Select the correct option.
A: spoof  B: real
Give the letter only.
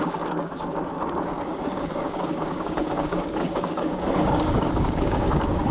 A